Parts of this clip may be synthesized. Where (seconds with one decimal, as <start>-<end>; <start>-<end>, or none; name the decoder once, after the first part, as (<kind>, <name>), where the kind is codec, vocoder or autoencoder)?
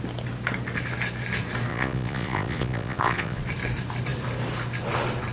1.7-3.4 (vocoder, Vocos)